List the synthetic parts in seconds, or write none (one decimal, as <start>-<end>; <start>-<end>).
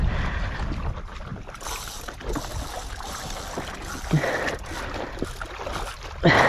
none